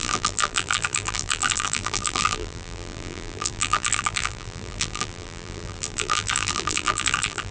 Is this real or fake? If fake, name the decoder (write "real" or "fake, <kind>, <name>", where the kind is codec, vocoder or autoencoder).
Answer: fake, vocoder, BigVGAN v2